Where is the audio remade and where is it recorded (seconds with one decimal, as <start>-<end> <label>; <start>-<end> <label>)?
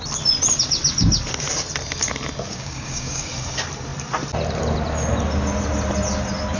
0.0-2.5 recorded; 2.5-3.3 remade; 3.3-6.6 recorded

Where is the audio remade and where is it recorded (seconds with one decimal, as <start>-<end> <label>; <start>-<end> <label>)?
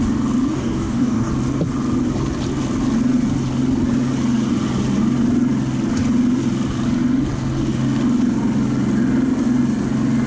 0.0-0.5 recorded; 0.5-1.3 remade; 1.3-10.3 recorded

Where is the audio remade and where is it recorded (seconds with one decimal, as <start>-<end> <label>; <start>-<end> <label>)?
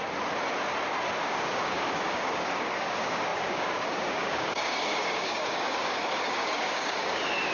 0.0-1.2 recorded; 1.2-7.5 remade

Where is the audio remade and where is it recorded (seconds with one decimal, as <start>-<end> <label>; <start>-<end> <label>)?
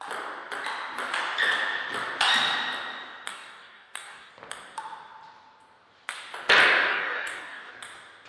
0.0-3.3 recorded; 3.3-4.3 remade; 4.3-6.9 recorded; 6.9-7.7 remade; 7.7-8.3 recorded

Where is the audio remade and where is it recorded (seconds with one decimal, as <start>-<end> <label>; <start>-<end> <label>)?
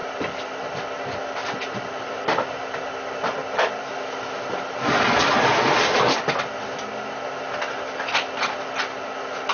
0.0-9.5 recorded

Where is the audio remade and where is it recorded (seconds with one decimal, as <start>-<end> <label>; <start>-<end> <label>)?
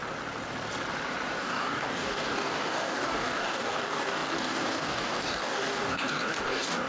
0.0-1.4 recorded; 1.4-6.9 remade